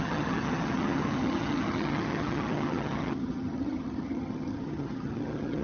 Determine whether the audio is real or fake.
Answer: fake